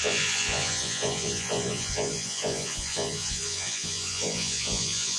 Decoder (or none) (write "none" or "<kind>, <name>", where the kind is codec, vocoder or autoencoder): vocoder, Vocos